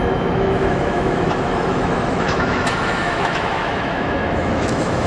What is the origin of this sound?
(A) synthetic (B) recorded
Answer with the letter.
A